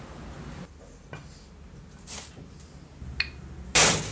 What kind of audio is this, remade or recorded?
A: recorded